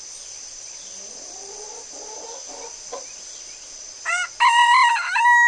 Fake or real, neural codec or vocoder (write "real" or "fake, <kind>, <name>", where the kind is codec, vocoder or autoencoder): real